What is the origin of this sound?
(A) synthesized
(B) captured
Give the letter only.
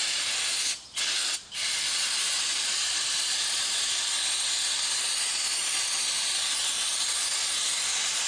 B